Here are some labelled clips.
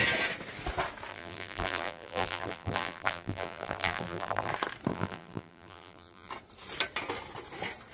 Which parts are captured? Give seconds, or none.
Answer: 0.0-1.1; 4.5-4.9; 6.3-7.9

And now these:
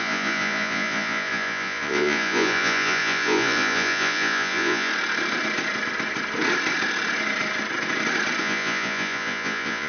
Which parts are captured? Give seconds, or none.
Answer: 4.9-8.4